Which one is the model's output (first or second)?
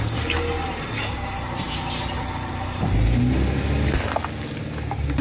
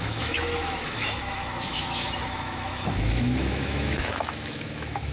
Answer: second